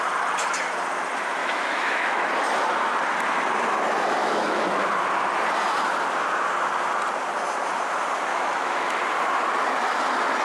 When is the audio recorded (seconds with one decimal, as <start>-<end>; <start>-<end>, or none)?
0.0-1.4; 2.3-4.2; 4.9-8.3; 9.0-10.4